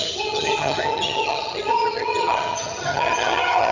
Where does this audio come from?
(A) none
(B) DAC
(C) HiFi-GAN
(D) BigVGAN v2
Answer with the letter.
C